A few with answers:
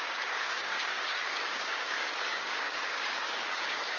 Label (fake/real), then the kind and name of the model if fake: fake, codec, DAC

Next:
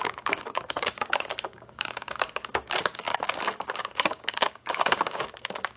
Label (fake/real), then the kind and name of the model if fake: fake, codec, DAC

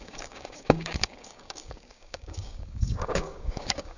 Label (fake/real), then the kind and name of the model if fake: fake, codec, DAC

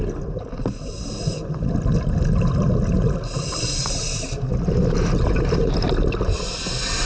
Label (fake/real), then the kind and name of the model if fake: real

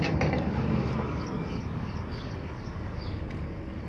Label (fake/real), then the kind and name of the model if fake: fake, codec, DAC